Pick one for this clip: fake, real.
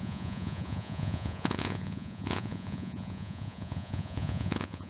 fake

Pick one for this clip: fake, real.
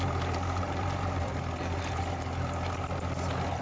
real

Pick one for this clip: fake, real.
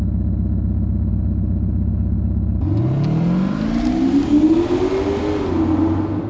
real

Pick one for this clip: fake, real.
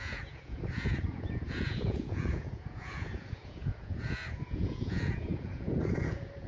fake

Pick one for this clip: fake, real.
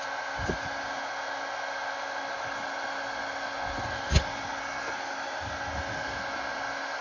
real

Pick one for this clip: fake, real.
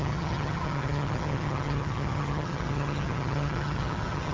fake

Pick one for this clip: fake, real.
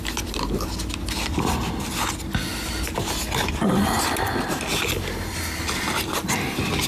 real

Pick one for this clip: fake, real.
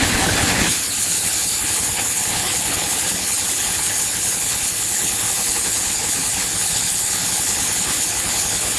fake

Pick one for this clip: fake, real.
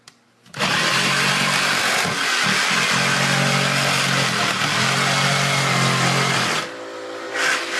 real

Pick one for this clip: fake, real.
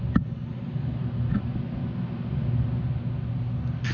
real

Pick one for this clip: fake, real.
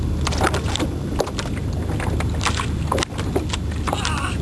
real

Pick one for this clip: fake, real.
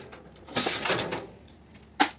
real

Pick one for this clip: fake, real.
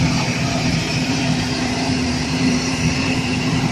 fake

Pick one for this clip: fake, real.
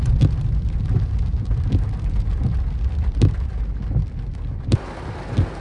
real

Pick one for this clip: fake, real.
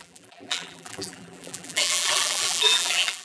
fake